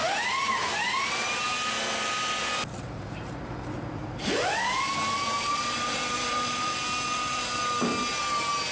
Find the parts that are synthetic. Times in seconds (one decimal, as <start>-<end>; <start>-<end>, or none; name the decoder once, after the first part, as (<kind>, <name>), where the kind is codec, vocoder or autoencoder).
4.0-7.6 (vocoder, BigVGAN v2)